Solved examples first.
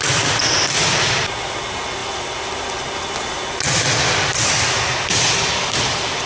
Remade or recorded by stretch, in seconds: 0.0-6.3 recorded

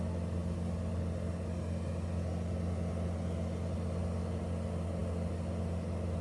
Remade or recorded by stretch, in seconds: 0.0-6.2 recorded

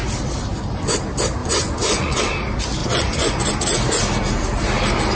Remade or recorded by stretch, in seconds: 0.0-1.4 recorded; 1.4-2.2 remade; 2.2-2.8 recorded; 2.8-3.5 remade; 3.5-5.1 recorded

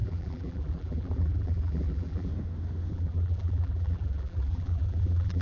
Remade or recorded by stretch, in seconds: 0.0-2.3 remade; 2.3-2.9 recorded; 2.9-5.4 remade